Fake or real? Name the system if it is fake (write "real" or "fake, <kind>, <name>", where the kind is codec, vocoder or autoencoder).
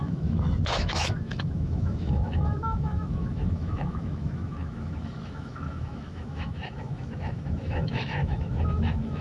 fake, autoencoder, DAC-VAE